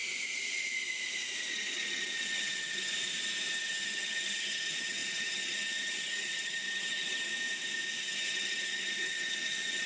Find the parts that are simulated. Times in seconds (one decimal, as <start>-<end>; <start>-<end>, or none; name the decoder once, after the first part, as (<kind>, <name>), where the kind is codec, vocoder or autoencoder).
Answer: 1.5-2.9 (vocoder, HiFi-GAN); 3.5-7.3; 8.0-9.9